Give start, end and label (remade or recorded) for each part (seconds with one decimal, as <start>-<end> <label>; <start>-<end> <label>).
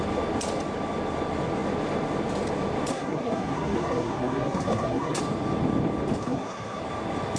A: 0.0-2.9 recorded; 2.9-5.2 remade; 5.2-6.2 recorded; 6.2-6.8 remade; 6.8-7.4 recorded